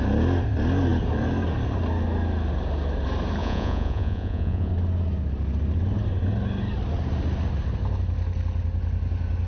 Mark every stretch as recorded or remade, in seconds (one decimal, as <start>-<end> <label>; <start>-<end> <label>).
0.0-3.4 recorded; 3.4-4.7 remade; 4.7-9.5 recorded